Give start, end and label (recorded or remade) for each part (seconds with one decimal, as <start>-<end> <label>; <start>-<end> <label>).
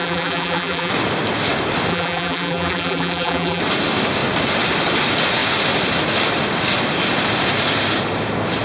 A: 0.0-0.9 remade; 0.9-1.9 recorded; 1.9-3.6 remade; 3.6-8.6 recorded